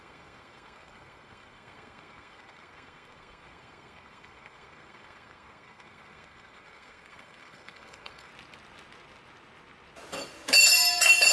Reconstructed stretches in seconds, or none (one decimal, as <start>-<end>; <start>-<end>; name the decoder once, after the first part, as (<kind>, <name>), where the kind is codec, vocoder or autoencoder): 0.0-8.3 (codec, SNAC)